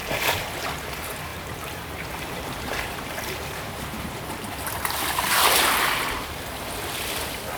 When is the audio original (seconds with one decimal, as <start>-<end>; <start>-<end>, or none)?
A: 0.0-1.3; 3.8-7.6